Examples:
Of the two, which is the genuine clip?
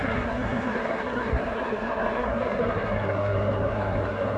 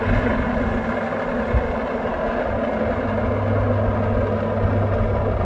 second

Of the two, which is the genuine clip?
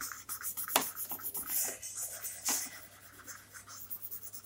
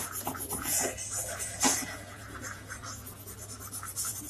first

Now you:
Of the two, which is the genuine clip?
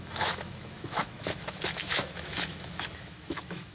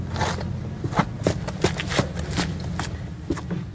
second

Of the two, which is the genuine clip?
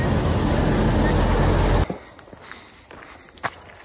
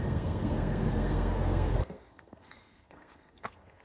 first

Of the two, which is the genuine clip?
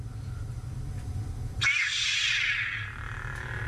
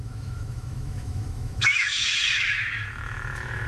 first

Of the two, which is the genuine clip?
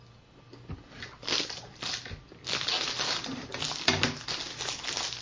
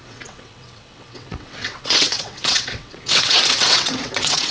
first